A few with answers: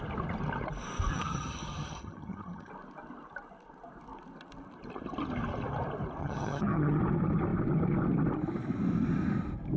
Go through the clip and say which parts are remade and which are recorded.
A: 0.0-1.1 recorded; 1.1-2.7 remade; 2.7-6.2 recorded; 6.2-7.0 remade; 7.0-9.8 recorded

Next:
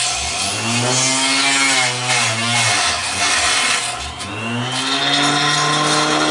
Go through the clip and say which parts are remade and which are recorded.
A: 0.0-6.3 recorded